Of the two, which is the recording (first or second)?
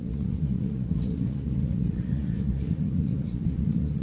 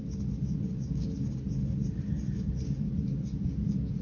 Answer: second